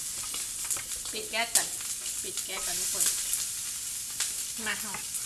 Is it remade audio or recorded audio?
recorded